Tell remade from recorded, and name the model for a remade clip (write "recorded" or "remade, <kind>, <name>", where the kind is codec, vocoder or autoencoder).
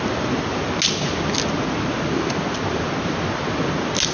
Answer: recorded